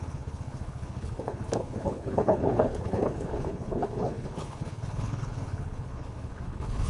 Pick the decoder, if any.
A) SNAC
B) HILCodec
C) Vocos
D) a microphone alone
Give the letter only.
B